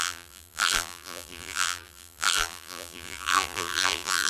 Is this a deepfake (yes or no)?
yes